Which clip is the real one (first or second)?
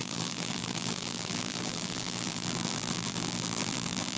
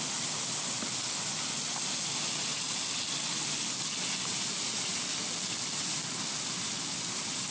second